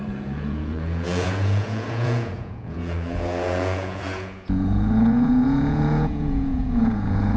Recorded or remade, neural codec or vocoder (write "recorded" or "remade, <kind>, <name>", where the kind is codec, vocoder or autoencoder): remade, vocoder, Vocos